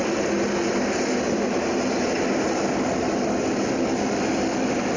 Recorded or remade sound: recorded